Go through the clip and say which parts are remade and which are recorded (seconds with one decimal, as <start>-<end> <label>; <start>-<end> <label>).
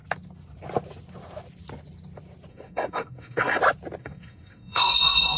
0.0-2.5 recorded; 2.5-3.6 remade; 3.6-4.0 recorded; 4.0-5.4 remade